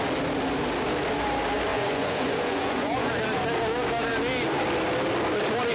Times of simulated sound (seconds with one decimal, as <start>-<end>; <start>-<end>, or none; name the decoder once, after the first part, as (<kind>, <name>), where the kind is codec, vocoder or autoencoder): 1.7-3.1 (vocoder, Vocos)